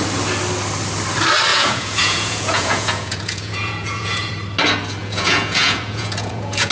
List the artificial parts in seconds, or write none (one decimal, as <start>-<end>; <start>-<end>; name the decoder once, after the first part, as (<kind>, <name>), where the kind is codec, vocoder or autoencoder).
1.5-4.3 (vocoder, Vocos); 5.0-6.7